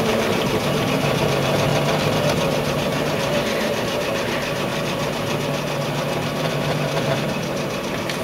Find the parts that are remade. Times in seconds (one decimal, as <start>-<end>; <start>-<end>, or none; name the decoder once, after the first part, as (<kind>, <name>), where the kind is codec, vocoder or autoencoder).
0.0-1.7 (vocoder, BigVGAN v2); 2.2-4.7; 6.5-8.2